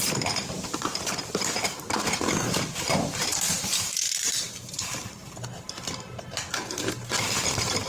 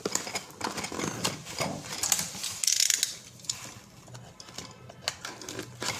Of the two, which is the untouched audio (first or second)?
second